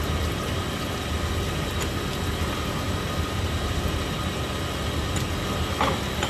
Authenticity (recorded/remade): recorded